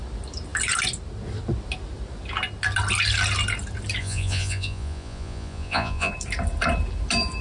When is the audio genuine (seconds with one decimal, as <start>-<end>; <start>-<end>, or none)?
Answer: 0.0-4.0; 6.1-7.4